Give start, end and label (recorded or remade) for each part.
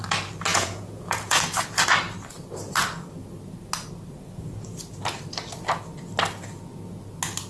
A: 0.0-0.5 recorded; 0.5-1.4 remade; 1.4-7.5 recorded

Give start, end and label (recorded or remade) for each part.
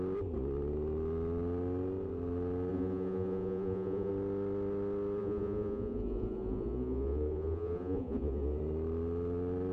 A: 0.0-2.7 recorded; 2.7-4.1 remade; 4.1-5.2 recorded; 5.2-8.6 remade; 8.6-9.7 recorded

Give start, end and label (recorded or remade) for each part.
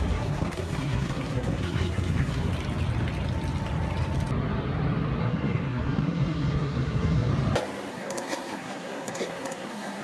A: 0.0-2.5 remade; 2.5-5.2 recorded; 5.2-7.3 remade; 7.3-7.9 recorded; 7.9-10.0 remade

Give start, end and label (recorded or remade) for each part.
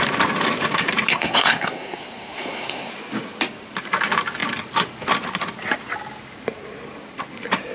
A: 0.0-1.1 recorded; 1.1-2.9 remade; 2.9-7.7 recorded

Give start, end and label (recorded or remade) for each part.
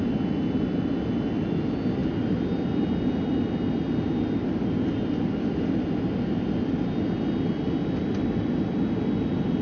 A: 0.0-9.6 recorded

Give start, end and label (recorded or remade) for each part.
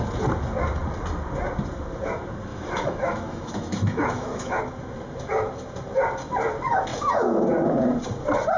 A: 0.0-2.5 recorded; 2.5-4.6 remade; 4.6-8.6 recorded